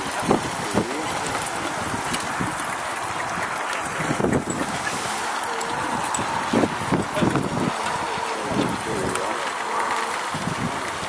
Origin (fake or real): real